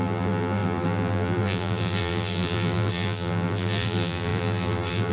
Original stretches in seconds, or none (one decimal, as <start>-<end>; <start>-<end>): none

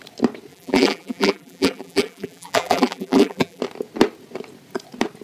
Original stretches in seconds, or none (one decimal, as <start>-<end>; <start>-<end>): 0.0-0.5; 3.6-5.2

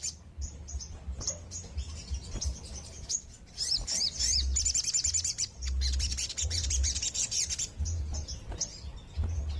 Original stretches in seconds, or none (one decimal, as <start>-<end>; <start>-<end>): 0.0-4.3; 7.5-9.6

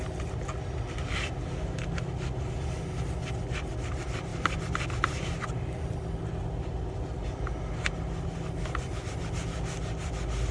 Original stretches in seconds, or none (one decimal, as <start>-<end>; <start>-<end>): 0.0-4.3; 5.4-10.5